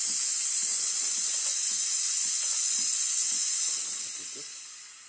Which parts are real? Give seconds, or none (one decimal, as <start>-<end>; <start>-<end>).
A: 0.0-0.7; 3.8-5.1